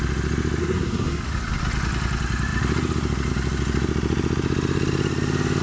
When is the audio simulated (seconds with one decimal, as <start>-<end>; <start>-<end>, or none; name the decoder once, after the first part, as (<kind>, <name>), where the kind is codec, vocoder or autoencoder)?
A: 0.6-1.2 (codec, SNAC)